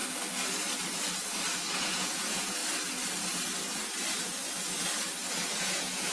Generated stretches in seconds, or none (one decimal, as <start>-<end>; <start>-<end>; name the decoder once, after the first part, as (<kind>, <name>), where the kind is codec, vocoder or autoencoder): 1.8-2.6 (vocoder, Vocos); 5.6-6.1